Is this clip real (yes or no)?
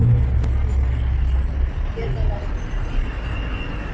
yes